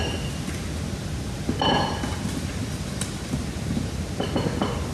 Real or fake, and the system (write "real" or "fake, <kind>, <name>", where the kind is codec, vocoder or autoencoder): real